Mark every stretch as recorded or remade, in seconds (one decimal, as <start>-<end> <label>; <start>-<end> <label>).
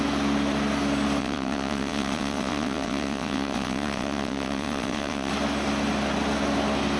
0.0-1.2 recorded; 1.2-5.3 remade; 5.3-7.0 recorded